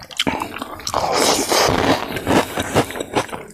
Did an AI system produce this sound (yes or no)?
no